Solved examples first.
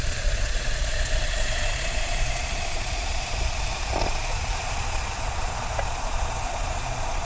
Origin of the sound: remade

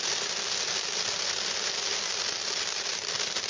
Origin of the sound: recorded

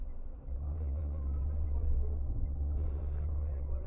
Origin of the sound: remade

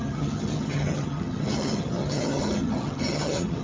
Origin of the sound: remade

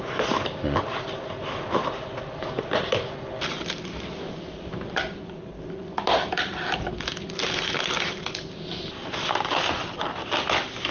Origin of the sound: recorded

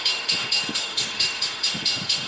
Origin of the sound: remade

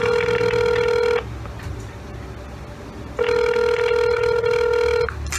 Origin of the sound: recorded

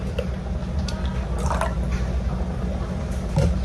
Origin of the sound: recorded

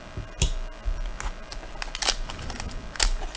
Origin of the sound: recorded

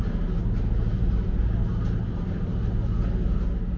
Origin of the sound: recorded